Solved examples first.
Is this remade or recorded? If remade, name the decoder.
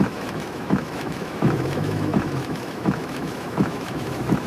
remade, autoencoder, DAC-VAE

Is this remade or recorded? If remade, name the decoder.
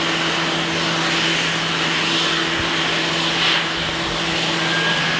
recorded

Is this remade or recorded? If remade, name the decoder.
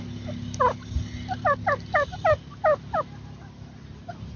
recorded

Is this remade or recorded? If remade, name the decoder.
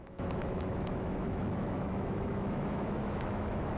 remade, autoencoder, DAC-VAE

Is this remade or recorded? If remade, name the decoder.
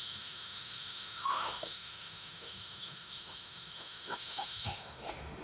remade, autoencoder, DAC-VAE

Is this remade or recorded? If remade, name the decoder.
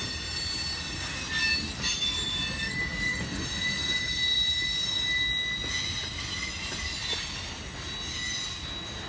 recorded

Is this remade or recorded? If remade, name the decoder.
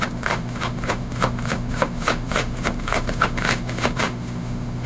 remade, autoencoder, DAC-VAE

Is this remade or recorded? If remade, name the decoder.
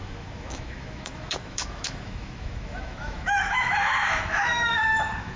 remade, autoencoder, DAC-VAE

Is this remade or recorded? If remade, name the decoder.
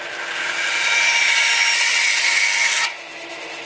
recorded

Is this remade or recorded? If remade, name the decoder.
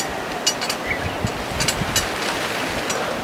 recorded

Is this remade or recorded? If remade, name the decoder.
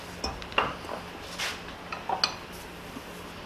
recorded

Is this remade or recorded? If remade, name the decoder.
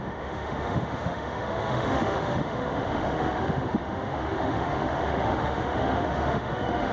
remade, autoencoder, DAC-VAE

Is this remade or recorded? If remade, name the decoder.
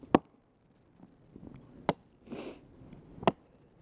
recorded